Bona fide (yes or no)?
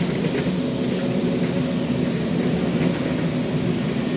yes